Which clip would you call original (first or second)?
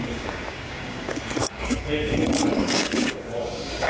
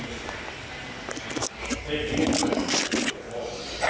second